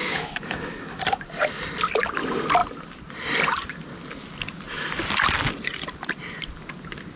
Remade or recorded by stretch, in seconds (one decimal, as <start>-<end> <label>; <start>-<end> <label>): 0.0-1.0 remade; 1.0-7.2 recorded